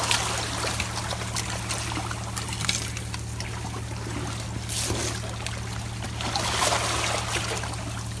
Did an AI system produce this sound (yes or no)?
no